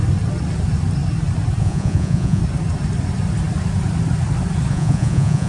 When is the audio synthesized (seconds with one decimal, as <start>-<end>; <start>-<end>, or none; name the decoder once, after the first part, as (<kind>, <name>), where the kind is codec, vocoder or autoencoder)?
1.6-2.4 (vocoder, Vocos); 4.7-5.5